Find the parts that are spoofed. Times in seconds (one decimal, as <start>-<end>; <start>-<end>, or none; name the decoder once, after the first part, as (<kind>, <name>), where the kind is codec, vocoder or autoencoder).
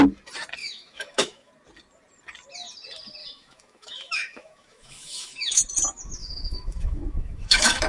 0.6-1.5 (autoencoder, DAC-VAE); 3.2-5.6; 6.2-7.9